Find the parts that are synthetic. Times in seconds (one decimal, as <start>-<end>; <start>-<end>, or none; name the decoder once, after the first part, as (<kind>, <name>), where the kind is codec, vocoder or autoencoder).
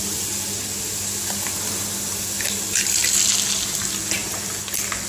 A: none